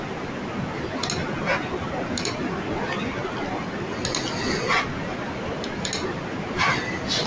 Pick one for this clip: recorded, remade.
recorded